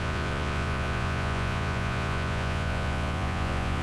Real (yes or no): no